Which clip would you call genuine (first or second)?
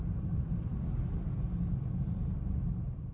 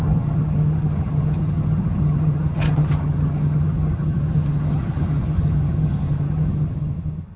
first